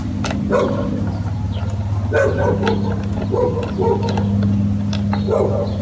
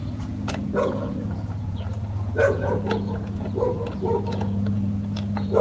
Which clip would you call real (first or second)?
first